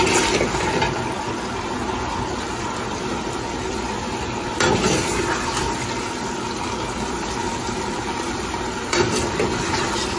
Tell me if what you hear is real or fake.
real